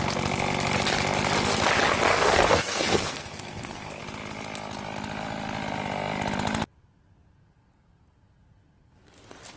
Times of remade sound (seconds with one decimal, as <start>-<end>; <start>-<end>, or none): 2.1-4.0